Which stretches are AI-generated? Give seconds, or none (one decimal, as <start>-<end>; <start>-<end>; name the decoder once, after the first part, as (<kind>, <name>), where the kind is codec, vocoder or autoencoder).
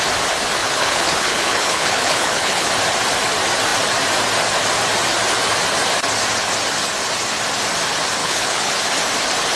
0.6-2.7 (codec, HILCodec); 8.2-8.7